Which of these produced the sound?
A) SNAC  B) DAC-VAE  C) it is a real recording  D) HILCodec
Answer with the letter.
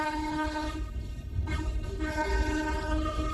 D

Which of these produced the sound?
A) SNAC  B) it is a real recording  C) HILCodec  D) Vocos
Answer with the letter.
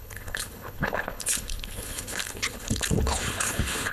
C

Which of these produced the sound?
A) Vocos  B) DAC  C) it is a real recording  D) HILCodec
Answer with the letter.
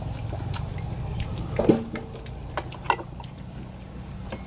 C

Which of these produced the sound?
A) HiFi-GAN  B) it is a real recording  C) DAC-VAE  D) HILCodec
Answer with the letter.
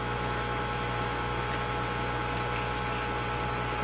B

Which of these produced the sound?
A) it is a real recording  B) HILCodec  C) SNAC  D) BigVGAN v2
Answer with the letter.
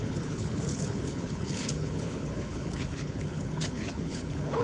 B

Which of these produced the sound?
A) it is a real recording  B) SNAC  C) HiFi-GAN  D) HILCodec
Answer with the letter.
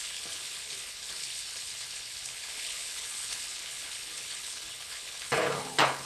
D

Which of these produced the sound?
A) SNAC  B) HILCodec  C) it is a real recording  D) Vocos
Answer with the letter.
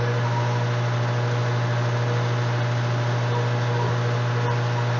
C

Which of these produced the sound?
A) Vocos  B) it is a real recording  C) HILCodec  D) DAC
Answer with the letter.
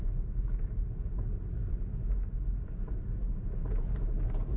B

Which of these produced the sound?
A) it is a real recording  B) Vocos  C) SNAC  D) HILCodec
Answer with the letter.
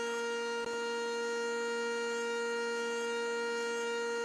A